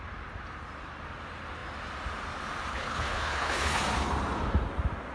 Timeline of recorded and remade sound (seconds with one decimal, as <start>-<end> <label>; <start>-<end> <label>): 0.0-2.7 recorded; 2.7-3.8 remade; 3.8-5.1 recorded